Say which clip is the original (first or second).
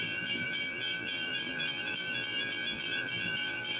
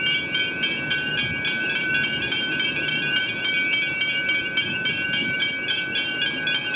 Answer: second